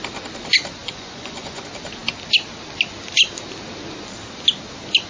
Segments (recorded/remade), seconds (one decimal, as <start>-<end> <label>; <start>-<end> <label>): 0.0-0.8 recorded; 0.8-1.6 remade; 1.6-5.1 recorded